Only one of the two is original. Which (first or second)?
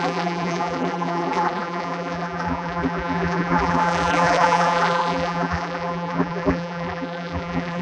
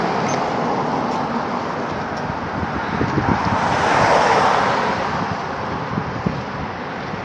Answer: second